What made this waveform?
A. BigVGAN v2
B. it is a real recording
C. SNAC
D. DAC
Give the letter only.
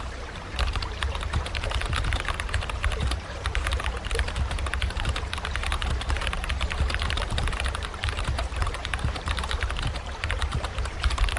A